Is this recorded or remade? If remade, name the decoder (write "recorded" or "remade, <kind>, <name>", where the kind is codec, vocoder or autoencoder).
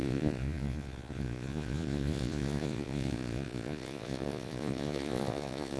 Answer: remade, vocoder, Vocos